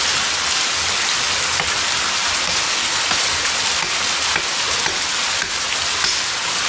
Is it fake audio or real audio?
real